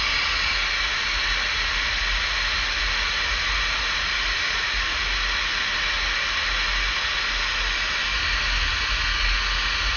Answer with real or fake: real